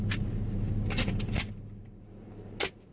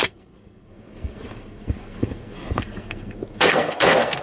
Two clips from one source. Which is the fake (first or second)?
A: second